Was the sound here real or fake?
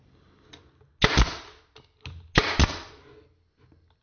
real